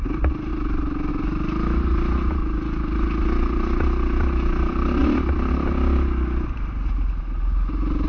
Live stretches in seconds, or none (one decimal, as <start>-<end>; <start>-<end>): 0.0-8.1